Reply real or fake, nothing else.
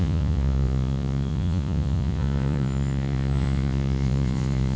fake